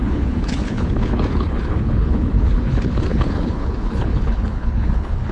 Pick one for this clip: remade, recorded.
remade